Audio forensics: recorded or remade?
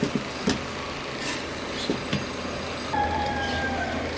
recorded